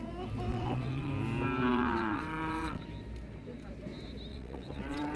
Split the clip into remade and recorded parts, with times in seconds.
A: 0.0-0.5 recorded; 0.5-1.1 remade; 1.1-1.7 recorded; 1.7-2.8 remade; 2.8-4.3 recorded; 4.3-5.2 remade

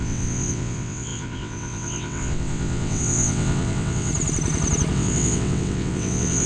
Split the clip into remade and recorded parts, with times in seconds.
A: 0.0-4.1 remade; 4.1-4.9 recorded; 4.9-6.5 remade

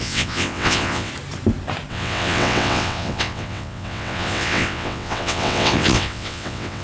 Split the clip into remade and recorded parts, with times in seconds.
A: 0.0-1.1 remade; 1.1-1.9 recorded; 1.9-6.8 remade

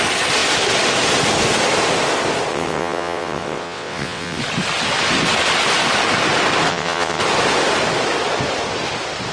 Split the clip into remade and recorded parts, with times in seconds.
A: 0.0-2.5 recorded; 2.5-4.4 remade; 4.4-6.7 recorded; 6.7-7.2 remade; 7.2-9.3 recorded

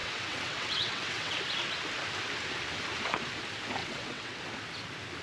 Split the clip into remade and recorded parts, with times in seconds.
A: 0.0-1.4 remade; 1.4-3.8 recorded; 3.8-4.4 remade; 4.4-5.2 recorded

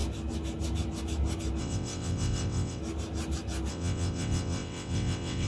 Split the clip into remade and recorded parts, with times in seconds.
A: 0.0-1.6 recorded; 1.6-2.8 remade; 2.8-3.7 recorded; 3.7-5.5 remade

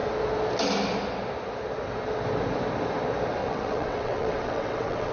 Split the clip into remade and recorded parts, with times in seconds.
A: 0.0-3.4 recorded; 3.4-5.1 remade